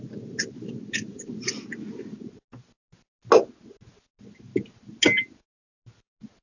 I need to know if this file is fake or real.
real